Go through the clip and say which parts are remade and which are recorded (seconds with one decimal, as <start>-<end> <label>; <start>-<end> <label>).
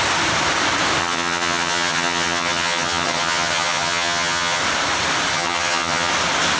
0.0-1.0 recorded; 1.0-4.6 remade; 4.6-5.3 recorded; 5.3-6.1 remade; 6.1-6.6 recorded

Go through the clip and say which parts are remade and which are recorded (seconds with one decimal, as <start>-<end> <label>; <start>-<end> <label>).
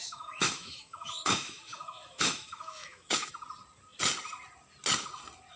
0.0-3.3 remade; 3.3-5.6 recorded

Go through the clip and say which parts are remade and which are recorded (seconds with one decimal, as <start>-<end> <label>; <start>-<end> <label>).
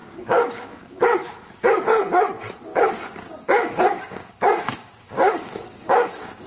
0.0-1.0 remade; 1.0-2.7 recorded; 2.7-6.5 remade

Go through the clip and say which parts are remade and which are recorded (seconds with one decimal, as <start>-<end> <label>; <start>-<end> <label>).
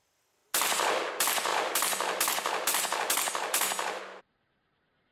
0.0-5.1 recorded